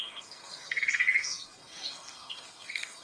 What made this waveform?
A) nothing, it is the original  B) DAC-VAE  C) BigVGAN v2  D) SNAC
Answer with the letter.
D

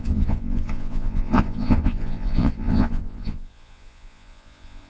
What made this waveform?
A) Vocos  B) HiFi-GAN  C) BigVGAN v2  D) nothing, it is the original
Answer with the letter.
A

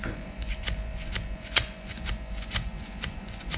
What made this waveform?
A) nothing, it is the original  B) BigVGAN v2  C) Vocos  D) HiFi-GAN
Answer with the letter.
C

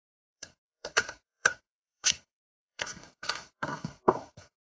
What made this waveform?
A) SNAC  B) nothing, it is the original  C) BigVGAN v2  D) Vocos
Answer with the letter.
A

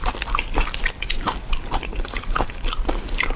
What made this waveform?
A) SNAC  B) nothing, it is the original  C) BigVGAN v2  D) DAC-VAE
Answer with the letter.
B